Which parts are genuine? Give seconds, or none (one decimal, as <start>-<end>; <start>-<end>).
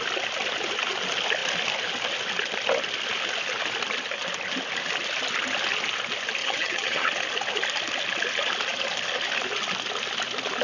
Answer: 0.0-6.4; 7.1-10.6